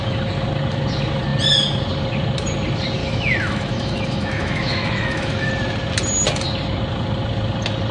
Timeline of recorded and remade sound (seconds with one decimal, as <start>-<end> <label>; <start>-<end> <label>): 0.0-3.0 recorded; 3.0-5.5 remade; 5.5-7.9 recorded